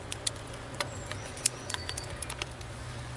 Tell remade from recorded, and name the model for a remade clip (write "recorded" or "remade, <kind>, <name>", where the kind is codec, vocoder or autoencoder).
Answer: remade, vocoder, Vocos